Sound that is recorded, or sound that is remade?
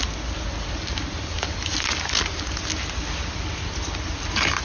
recorded